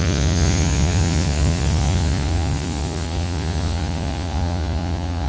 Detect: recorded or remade remade